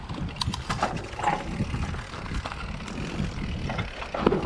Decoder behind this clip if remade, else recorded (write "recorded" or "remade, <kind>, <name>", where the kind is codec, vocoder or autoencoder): recorded